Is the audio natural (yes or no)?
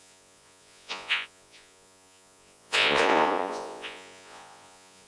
no